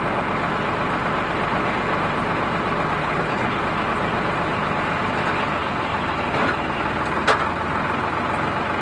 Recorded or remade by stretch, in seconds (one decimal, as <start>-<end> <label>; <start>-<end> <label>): 0.0-3.0 recorded; 3.0-3.6 remade; 3.6-8.8 recorded